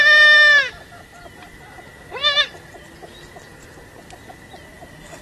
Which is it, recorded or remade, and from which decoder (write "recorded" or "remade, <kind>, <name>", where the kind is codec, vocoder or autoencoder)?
recorded